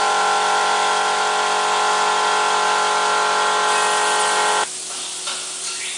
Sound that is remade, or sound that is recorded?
recorded